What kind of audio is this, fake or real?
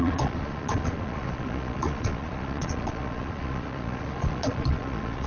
fake